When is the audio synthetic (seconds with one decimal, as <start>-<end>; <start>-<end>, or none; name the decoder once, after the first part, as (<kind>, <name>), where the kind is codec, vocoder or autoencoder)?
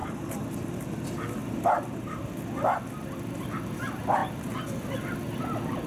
0.0-0.8 (vocoder, BigVGAN v2); 1.4-2.8